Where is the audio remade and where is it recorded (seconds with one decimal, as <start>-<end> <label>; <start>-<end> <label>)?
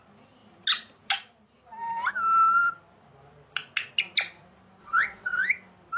0.0-4.8 recorded; 4.8-5.4 remade; 5.4-6.0 recorded